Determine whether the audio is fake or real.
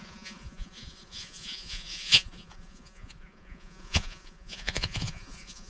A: fake